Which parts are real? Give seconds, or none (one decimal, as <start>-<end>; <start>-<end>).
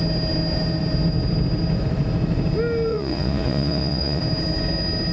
0.0-2.9; 4.2-5.1